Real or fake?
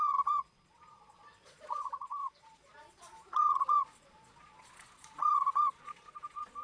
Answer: fake